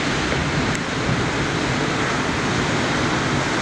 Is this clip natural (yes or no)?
yes